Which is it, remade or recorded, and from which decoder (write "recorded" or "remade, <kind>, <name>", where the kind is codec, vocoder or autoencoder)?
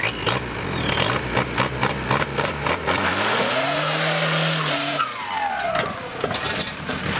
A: recorded